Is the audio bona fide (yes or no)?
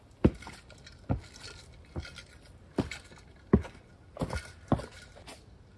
yes